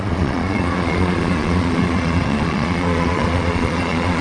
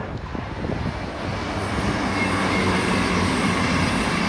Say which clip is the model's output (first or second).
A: first